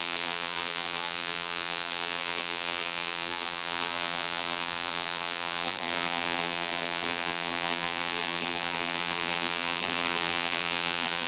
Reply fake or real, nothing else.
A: fake